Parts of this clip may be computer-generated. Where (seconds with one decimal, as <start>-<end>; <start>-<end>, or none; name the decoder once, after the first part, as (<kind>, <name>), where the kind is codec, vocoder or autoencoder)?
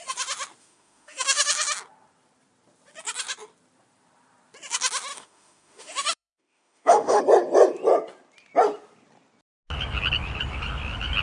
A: 0.6-1.5 (autoencoder, DAC-VAE); 5.1-7.2